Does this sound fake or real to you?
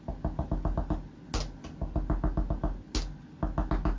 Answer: real